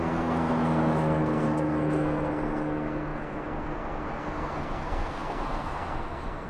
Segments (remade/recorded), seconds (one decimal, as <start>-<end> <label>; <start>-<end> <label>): 0.0-6.5 remade